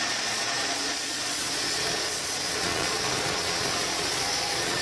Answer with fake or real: fake